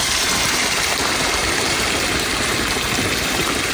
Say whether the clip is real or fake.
fake